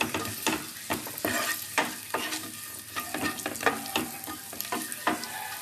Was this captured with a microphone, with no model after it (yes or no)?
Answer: yes